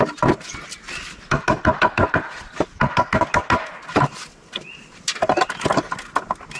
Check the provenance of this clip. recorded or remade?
recorded